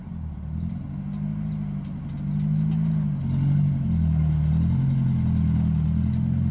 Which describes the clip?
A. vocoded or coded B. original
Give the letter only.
B